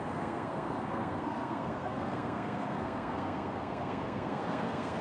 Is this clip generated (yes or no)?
yes